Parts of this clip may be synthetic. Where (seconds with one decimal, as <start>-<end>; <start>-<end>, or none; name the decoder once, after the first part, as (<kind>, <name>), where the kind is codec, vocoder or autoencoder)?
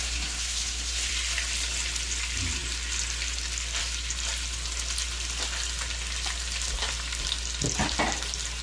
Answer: 0.0-1.1 (codec, SNAC)